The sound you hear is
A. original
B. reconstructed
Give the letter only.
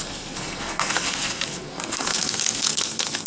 B